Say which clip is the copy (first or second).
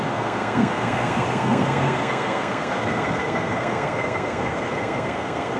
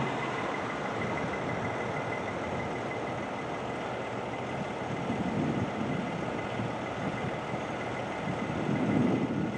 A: first